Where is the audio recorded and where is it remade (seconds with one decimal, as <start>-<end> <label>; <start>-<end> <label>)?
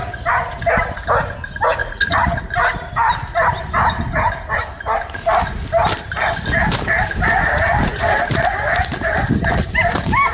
0.0-1.8 recorded; 1.8-2.4 remade; 2.4-10.3 recorded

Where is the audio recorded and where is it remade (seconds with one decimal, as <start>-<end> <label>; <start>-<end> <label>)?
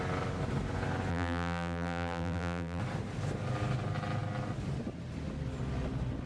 0.0-1.1 recorded; 1.1-2.8 remade; 2.8-6.3 recorded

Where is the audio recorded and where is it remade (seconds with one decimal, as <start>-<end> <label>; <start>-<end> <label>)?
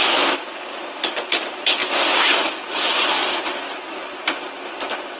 0.0-5.2 recorded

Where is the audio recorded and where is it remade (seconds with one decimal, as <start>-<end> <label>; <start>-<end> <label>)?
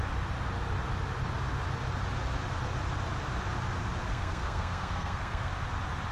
0.0-4.1 recorded; 4.1-5.5 remade; 5.5-6.1 recorded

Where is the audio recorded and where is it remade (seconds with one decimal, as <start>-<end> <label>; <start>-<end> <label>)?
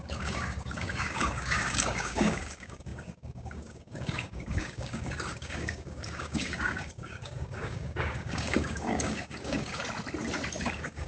0.0-9.8 remade; 9.8-10.6 recorded; 10.6-11.1 remade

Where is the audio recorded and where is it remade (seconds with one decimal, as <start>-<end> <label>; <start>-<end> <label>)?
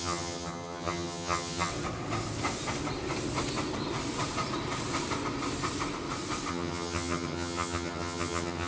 0.0-1.7 remade; 1.7-6.5 recorded; 6.5-8.7 remade